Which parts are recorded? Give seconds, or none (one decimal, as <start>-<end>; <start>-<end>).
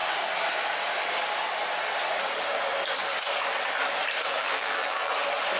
0.0-4.4; 5.1-5.6